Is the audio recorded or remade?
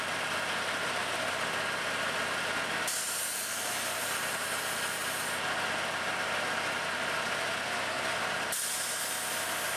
recorded